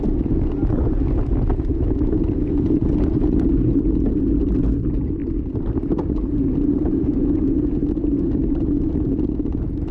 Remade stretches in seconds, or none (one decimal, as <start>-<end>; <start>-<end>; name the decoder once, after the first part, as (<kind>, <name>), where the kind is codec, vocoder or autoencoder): none